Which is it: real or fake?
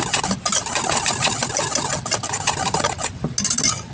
real